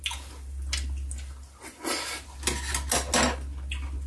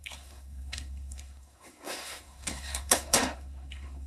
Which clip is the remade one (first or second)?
second